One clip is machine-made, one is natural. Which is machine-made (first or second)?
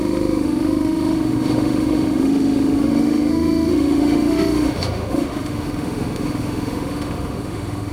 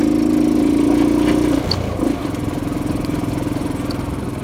first